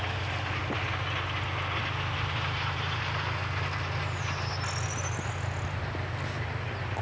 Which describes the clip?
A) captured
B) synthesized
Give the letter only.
A